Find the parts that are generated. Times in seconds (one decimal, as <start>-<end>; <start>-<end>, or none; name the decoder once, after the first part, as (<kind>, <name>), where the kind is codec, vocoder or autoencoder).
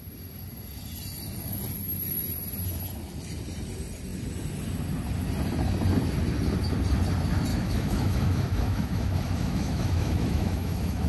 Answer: 7.5-11.1 (autoencoder, DAC-VAE)